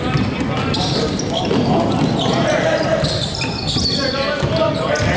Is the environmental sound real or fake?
real